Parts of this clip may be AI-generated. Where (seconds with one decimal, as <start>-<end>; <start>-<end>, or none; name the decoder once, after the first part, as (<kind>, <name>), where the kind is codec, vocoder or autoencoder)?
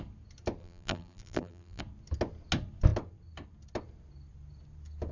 0.6-1.8 (vocoder, BigVGAN v2)